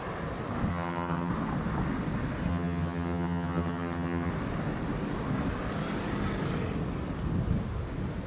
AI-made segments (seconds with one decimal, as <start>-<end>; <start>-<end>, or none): 0.7-1.3; 2.5-4.3